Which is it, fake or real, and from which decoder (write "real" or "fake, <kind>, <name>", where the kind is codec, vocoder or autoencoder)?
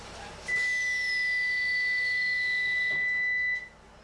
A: real